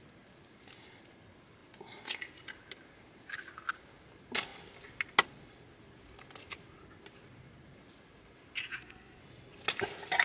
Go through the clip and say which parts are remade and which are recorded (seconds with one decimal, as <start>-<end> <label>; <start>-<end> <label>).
0.0-8.7 recorded; 8.7-9.2 remade; 9.2-10.2 recorded